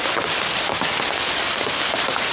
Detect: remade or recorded recorded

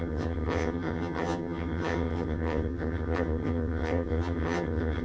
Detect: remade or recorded remade